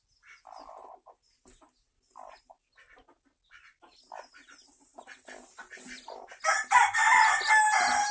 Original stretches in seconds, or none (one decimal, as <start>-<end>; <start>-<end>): 0.0-8.1